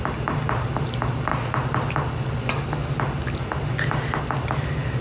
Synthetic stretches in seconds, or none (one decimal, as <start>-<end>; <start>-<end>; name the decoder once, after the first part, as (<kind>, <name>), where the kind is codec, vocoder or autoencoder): none